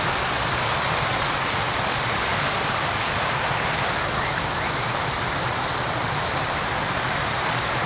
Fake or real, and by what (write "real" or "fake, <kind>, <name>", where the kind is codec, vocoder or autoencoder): real